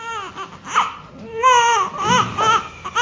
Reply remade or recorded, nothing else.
recorded